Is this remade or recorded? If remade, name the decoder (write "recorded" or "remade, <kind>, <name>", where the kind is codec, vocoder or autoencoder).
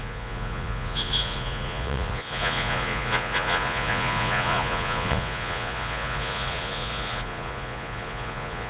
remade, vocoder, Vocos